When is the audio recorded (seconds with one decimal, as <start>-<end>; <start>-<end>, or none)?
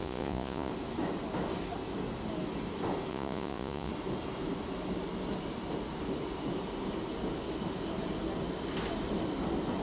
0.7-3.1; 3.9-9.8